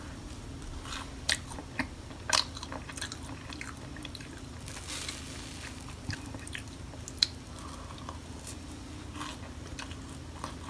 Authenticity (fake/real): real